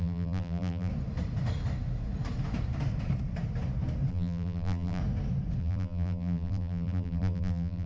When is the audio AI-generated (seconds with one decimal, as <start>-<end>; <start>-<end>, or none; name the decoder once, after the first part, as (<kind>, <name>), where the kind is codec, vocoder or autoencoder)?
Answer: 0.0-0.9 (vocoder, BigVGAN v2); 4.1-5.0; 5.6-7.9